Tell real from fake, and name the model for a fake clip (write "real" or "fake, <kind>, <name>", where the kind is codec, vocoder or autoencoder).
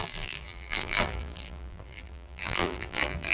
fake, vocoder, BigVGAN v2